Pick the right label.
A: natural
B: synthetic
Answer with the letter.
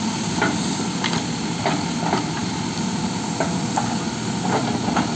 A